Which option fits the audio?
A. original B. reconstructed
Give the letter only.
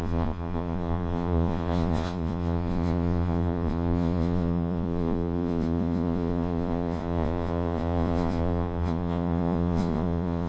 B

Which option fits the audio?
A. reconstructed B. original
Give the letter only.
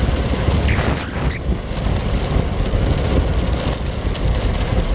B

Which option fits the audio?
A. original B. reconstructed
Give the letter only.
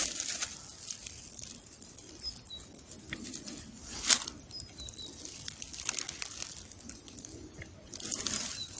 A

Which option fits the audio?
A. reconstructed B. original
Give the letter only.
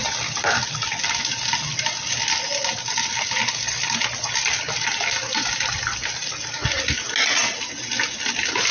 B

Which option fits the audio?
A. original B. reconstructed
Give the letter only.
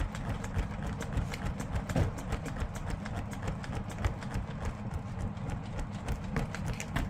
A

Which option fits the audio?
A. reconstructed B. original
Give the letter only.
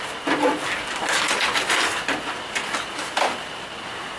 B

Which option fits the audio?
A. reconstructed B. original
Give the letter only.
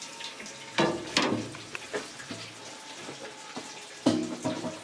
B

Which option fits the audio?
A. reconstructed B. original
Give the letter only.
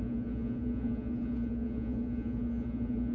A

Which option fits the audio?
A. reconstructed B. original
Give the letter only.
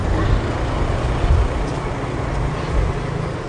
B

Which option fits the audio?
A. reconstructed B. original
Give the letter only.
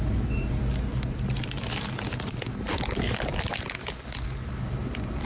B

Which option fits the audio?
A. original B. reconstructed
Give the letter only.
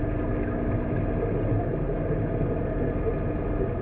A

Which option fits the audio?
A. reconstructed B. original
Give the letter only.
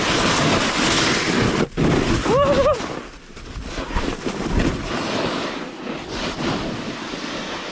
B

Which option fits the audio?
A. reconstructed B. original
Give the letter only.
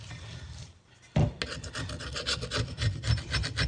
B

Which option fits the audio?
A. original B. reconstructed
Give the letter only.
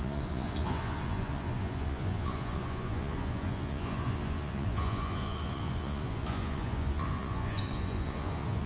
B